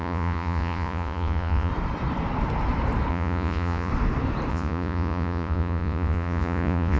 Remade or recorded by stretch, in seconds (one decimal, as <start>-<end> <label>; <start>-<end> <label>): 0.0-1.7 remade; 1.7-3.1 recorded; 3.1-3.9 remade; 3.9-4.5 recorded; 4.5-7.0 remade